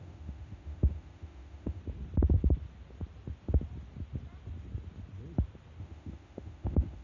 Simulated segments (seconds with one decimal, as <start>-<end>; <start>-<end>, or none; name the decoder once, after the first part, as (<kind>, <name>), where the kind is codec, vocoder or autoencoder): 0.0-1.8 (autoencoder, DAC-VAE); 5.8-7.0